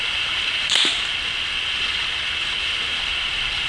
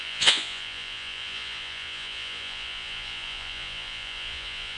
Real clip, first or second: first